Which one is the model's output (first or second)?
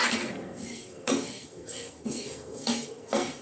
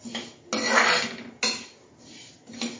first